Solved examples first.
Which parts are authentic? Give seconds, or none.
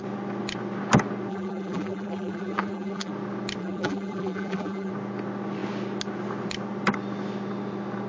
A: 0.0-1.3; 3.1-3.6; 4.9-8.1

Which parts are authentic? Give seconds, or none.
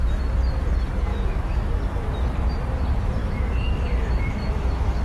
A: 0.0-1.1; 1.8-3.2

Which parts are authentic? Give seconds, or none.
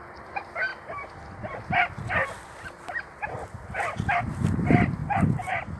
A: 0.7-4.2; 5.0-5.8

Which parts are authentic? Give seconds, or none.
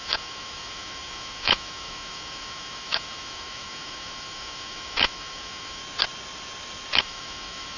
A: 5.8-7.0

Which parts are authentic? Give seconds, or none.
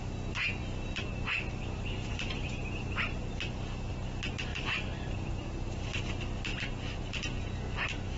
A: 0.0-0.6; 2.5-4.5; 6.0-6.5; 7.2-8.2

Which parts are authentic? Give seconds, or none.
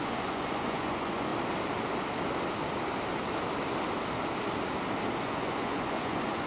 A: 1.3-5.2